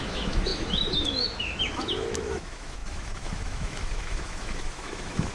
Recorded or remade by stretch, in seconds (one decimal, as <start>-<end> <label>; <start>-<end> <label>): 0.0-5.3 remade